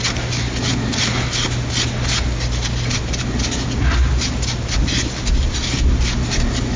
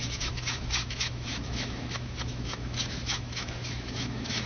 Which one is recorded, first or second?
first